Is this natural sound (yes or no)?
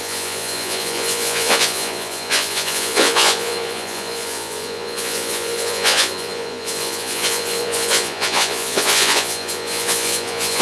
no